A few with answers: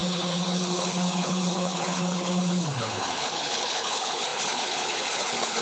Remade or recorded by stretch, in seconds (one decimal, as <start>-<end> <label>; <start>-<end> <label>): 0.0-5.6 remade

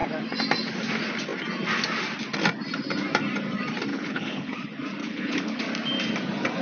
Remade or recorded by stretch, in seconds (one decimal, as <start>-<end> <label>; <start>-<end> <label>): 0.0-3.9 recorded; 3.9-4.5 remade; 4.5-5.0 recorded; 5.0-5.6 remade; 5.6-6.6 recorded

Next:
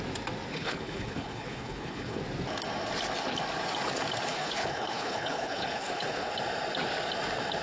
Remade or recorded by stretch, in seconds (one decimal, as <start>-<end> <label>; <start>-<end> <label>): 0.0-0.5 recorded; 0.5-2.2 remade; 2.2-4.3 recorded; 4.3-6.3 remade; 6.3-7.6 recorded

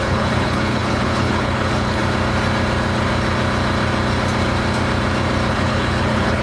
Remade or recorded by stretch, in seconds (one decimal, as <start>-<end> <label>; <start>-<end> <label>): 0.0-2.0 remade; 2.0-5.5 recorded; 5.5-6.4 remade